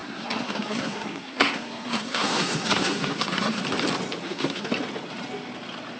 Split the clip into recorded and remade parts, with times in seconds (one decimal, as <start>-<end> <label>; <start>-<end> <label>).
0.0-3.6 remade; 3.6-4.2 recorded; 4.2-4.7 remade; 4.7-6.0 recorded